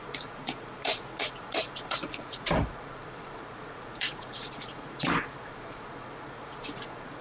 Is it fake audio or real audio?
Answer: fake